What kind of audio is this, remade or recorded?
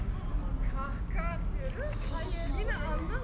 recorded